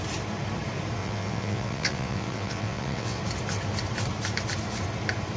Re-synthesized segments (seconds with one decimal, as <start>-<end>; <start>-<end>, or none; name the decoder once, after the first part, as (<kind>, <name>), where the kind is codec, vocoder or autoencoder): 1.0-3.2 (vocoder, WaveNeXt)

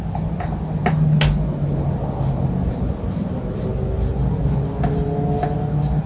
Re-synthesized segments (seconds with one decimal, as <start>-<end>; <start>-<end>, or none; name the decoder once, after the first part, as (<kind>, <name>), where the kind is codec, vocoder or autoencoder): none

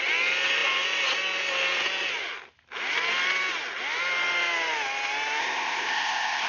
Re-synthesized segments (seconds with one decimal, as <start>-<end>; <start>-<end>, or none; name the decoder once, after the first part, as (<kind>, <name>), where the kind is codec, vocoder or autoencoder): 5.4-6.5 (codec, ZipCodec)